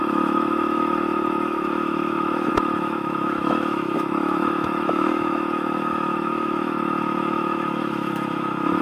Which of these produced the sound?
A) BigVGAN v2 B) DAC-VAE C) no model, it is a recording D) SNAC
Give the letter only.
B